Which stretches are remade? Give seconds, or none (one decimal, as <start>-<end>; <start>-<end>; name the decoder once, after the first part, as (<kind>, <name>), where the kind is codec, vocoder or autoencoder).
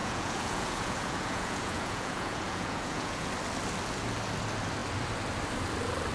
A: 0.0-3.3 (vocoder, Vocos)